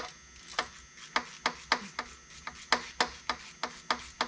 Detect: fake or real real